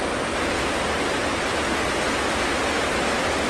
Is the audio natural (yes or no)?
yes